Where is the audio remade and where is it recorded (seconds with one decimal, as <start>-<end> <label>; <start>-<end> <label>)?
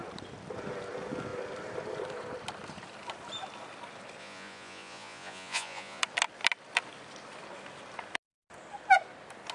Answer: 0.0-4.2 recorded; 4.2-6.0 remade; 6.0-9.5 recorded